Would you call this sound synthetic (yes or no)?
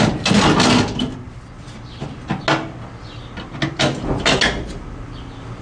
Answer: no